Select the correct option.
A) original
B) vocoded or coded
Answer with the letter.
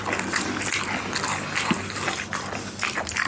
A